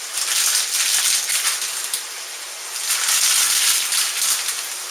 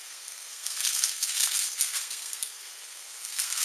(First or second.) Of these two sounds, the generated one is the second